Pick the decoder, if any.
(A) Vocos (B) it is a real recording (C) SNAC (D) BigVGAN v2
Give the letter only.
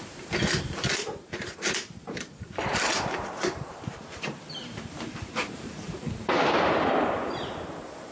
D